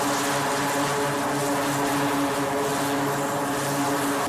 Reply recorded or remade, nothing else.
recorded